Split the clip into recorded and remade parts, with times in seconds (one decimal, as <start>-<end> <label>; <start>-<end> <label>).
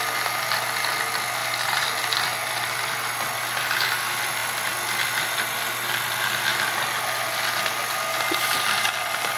0.0-1.4 recorded; 1.4-3.0 remade; 3.0-9.4 recorded